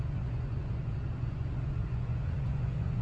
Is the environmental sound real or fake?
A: fake